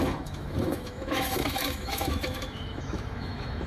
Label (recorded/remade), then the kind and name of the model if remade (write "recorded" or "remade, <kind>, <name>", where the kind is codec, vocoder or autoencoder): remade, autoencoder, DAC-VAE